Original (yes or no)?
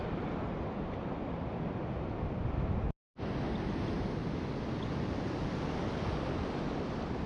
yes